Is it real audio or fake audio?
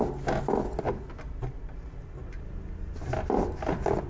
real